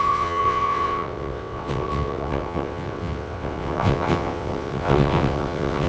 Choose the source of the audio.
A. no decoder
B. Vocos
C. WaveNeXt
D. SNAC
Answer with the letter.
C